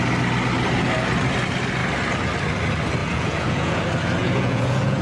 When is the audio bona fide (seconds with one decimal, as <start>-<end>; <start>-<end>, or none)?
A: 0.0-3.0; 3.8-4.2